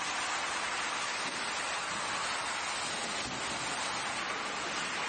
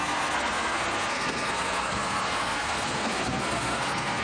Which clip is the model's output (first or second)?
second